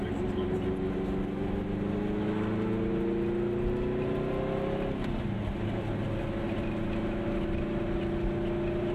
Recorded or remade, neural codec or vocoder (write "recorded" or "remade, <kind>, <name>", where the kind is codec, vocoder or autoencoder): recorded